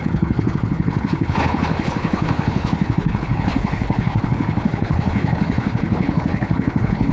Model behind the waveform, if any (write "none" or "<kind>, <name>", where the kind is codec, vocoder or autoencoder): codec, HILCodec